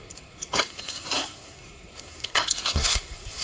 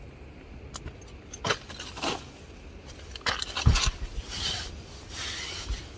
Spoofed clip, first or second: first